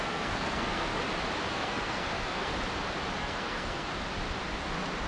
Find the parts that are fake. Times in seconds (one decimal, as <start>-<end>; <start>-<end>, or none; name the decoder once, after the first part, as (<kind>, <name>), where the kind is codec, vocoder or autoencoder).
0.0-0.9 (codec, SNAC); 1.5-2.5; 3.2-3.9